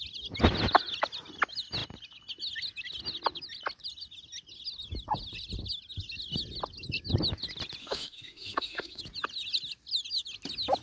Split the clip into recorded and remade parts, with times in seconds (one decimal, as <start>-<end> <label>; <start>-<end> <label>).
0.0-7.8 recorded; 7.8-9.0 remade; 9.0-10.8 recorded